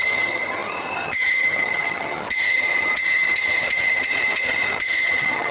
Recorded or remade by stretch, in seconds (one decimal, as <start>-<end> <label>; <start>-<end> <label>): 0.0-5.5 remade